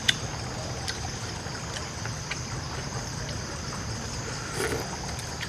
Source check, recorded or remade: recorded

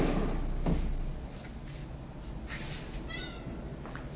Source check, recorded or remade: recorded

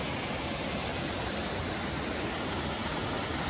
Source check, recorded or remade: recorded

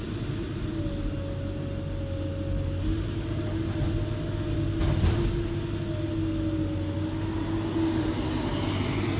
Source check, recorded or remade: recorded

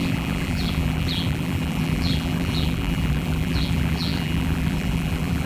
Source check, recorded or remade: remade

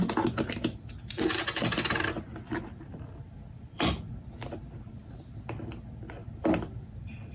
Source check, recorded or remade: remade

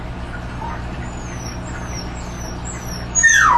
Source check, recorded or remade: recorded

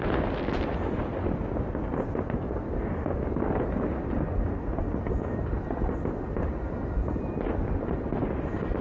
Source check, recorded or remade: recorded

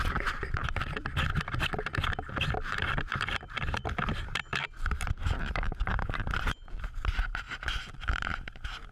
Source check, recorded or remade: remade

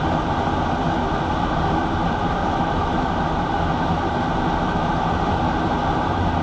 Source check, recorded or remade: remade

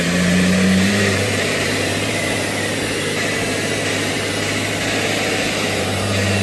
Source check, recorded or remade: remade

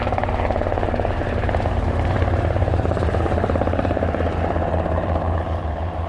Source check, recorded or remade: remade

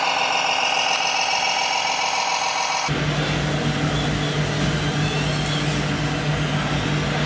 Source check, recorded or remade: recorded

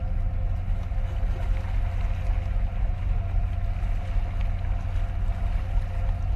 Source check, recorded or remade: recorded